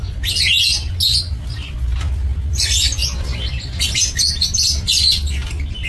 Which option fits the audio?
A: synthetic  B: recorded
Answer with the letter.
B